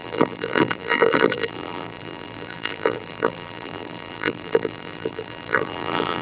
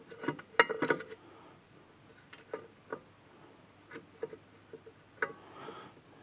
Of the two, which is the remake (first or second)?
first